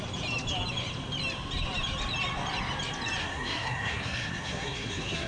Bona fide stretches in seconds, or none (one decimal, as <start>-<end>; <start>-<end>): 0.0-3.2